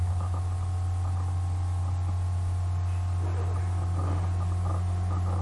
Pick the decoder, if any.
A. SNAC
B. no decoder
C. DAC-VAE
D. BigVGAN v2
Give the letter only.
B